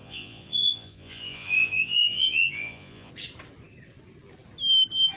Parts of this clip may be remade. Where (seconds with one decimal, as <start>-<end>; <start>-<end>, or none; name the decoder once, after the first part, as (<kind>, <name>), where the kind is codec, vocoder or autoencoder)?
0.0-3.1 (vocoder, Vocos)